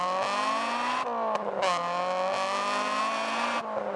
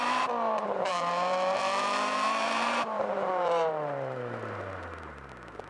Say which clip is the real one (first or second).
first